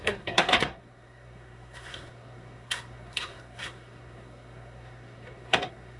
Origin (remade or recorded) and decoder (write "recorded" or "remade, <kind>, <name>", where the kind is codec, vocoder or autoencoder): remade, codec, SNAC